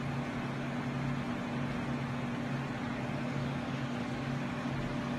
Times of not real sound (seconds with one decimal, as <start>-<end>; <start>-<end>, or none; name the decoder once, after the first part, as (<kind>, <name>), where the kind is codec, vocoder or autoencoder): 2.9-4.5 (codec, DAC)